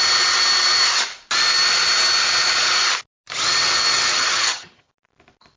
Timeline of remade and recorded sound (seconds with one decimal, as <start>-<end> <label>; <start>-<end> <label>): 0.0-4.1 recorded; 4.1-4.9 remade; 4.9-5.6 recorded